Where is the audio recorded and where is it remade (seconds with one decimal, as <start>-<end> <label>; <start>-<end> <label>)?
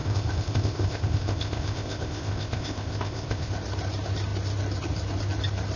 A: 0.0-3.5 remade; 3.5-5.8 recorded